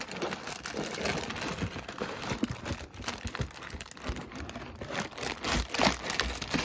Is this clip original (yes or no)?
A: yes